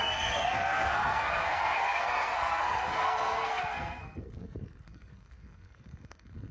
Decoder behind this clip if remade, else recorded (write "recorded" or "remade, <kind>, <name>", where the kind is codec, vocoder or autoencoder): remade, codec, SNAC